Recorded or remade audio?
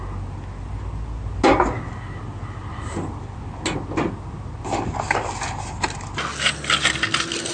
recorded